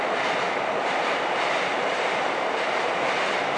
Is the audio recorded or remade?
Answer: remade